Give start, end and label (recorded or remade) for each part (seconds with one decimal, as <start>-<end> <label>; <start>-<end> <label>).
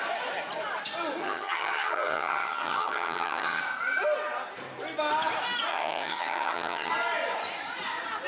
0.0-1.2 recorded; 1.2-3.6 remade; 3.6-5.7 recorded; 5.7-6.9 remade; 6.9-8.3 recorded